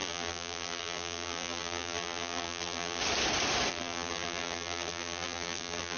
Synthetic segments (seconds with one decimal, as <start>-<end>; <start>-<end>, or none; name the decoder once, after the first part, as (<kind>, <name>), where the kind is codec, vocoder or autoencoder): 0.0-3.0 (vocoder, BigVGAN v2); 3.7-6.0